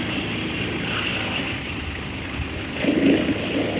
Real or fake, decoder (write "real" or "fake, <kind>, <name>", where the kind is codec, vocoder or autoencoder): real